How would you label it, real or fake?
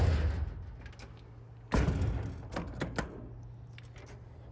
real